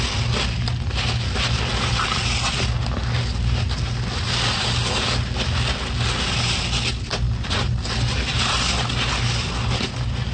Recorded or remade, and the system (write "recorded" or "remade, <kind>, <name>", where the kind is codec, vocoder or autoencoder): recorded